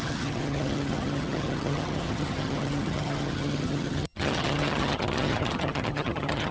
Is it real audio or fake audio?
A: fake